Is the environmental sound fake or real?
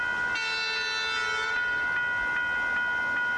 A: real